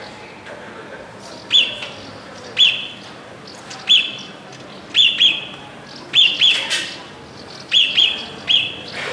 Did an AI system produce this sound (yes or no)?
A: no